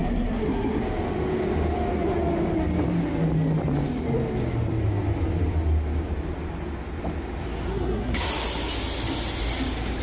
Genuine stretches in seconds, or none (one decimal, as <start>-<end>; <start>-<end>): 0.8-7.7; 8.3-10.0